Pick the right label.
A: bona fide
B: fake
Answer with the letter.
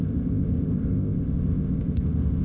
B